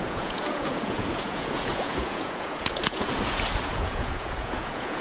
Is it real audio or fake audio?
fake